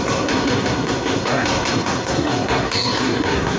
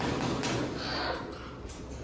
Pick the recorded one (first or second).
second